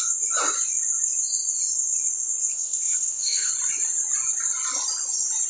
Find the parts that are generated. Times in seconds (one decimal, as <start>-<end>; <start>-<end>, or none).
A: 2.5-3.5